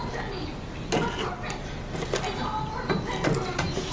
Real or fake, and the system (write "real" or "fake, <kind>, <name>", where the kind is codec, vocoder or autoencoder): real